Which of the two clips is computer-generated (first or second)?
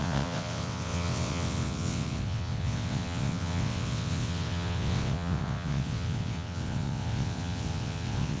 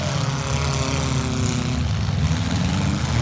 first